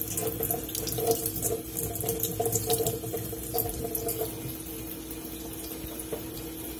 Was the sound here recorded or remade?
recorded